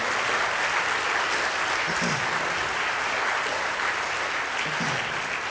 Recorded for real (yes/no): yes